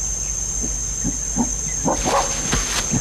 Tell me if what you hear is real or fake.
real